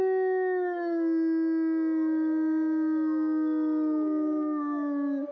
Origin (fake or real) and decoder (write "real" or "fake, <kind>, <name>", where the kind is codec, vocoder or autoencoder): real